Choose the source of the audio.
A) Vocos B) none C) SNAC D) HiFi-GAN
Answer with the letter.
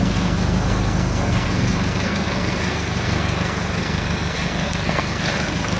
C